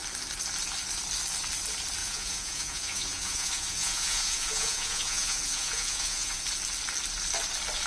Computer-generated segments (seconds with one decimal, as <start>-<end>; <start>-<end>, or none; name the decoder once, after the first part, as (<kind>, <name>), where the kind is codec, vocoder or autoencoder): 2.0-6.4 (vocoder, Vocos)